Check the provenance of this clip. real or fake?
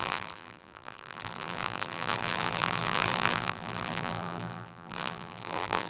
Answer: fake